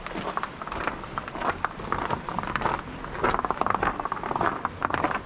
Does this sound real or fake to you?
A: real